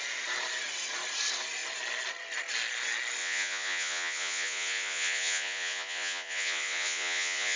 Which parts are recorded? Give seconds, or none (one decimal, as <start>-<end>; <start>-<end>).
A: 0.0-3.2